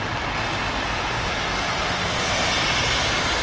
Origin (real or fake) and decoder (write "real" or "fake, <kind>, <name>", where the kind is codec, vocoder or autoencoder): real